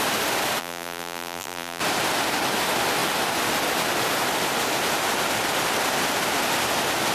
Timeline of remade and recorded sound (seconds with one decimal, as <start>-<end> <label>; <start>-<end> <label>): 0.0-0.6 recorded; 0.6-1.8 remade; 1.8-7.1 recorded